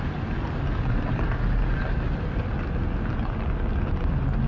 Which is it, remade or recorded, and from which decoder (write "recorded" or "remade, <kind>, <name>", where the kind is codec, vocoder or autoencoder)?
recorded